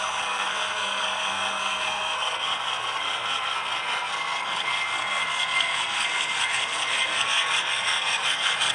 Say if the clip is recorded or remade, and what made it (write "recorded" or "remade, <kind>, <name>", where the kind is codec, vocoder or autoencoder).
remade, codec, SNAC